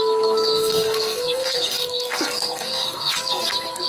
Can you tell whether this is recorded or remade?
remade